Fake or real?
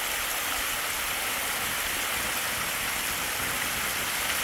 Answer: real